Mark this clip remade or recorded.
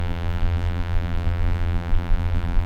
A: remade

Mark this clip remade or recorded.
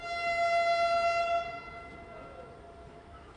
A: recorded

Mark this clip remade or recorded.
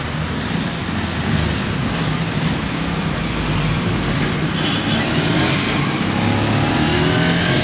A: recorded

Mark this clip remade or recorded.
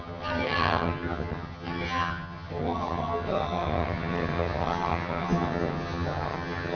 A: remade